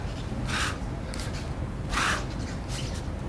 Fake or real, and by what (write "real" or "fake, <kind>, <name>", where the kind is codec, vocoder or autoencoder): real